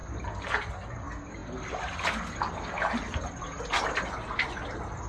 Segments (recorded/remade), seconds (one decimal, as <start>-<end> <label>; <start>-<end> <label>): 0.0-5.1 recorded